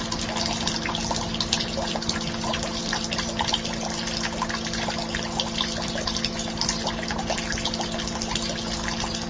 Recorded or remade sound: recorded